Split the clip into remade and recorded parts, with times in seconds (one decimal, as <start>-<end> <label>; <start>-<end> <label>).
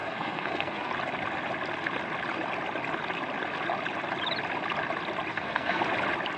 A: 0.0-0.9 remade; 0.9-5.3 recorded; 5.3-5.8 remade; 5.8-6.4 recorded